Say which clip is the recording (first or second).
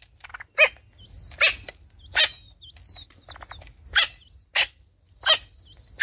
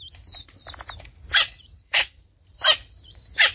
first